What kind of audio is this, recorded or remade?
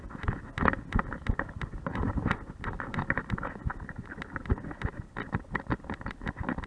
recorded